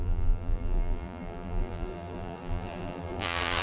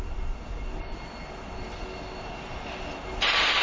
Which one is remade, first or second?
first